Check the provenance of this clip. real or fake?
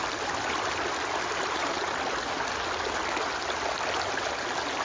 real